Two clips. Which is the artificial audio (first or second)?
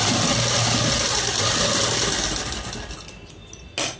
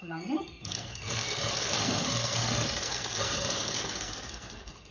second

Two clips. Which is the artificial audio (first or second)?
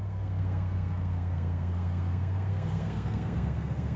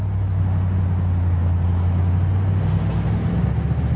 first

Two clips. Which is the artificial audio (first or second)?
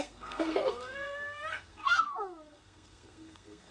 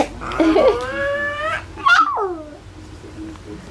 first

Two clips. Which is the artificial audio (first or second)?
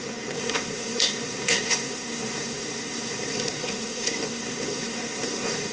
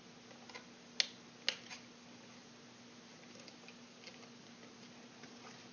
first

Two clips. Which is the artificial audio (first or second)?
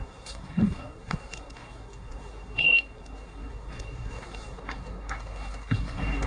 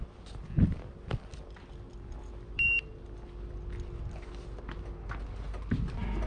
first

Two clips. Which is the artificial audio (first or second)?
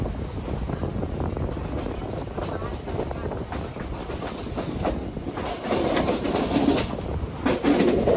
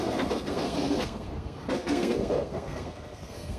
second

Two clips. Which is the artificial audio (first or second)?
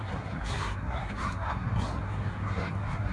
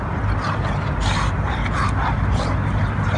first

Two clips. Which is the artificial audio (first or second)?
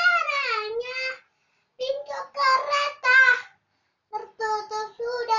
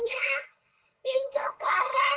second